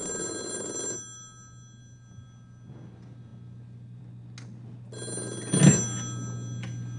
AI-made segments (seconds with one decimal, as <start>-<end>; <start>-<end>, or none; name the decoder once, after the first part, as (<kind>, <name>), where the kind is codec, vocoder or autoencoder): none